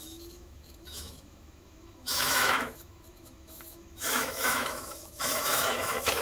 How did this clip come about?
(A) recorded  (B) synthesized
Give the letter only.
B